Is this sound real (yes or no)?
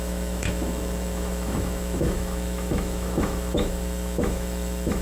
no